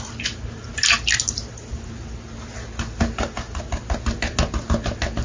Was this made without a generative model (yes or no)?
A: yes